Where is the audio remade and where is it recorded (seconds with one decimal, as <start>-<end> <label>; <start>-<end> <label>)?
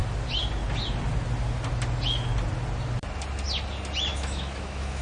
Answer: 0.0-4.1 recorded; 4.1-5.0 remade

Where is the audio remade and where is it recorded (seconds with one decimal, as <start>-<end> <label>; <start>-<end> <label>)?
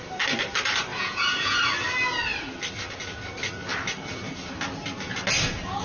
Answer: 0.0-0.9 recorded; 0.9-1.6 remade; 1.6-5.8 recorded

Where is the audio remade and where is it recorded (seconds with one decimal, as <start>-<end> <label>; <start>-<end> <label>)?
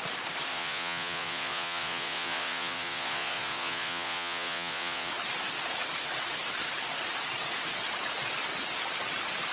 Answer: 0.0-0.5 recorded; 0.5-5.1 remade; 5.1-9.5 recorded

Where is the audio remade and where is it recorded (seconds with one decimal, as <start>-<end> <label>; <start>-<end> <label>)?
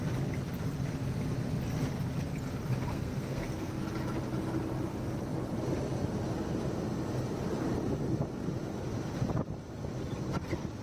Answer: 0.0-2.9 recorded; 2.9-3.7 remade; 3.7-10.8 recorded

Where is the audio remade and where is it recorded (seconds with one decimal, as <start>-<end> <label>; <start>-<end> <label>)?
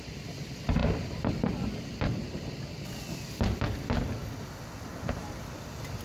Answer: 0.0-6.0 recorded